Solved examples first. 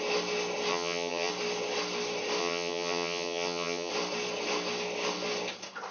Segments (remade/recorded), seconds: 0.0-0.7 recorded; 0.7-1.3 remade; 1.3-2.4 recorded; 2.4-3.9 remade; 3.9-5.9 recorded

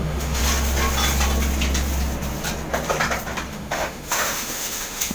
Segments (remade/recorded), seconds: 0.0-0.4 remade; 0.4-3.5 recorded; 3.5-5.1 remade

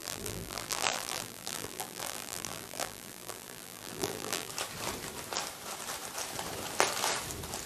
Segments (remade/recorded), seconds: 0.0-4.5 remade; 4.5-7.7 recorded

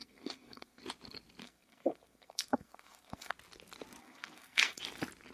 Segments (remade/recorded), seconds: 0.0-0.8 remade; 0.8-1.4 recorded; 1.4-3.3 remade; 3.3-4.0 recorded; 4.0-4.8 remade; 4.8-5.3 recorded

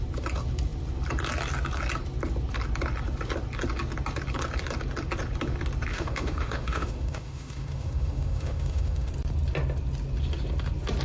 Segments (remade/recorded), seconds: 0.0-5.9 recorded; 5.9-9.1 remade; 9.1-11.0 recorded